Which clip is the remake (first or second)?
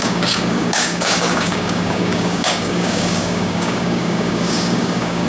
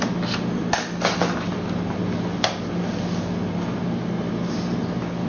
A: first